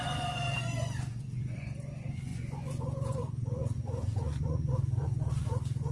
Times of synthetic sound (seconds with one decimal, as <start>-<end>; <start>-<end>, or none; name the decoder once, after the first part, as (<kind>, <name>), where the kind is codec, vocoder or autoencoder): 0.0-5.9 (vocoder, Vocos)